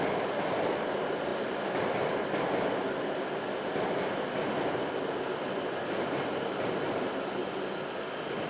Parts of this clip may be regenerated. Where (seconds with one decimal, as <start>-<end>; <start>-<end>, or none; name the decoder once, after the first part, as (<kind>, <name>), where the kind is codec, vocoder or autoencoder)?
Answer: none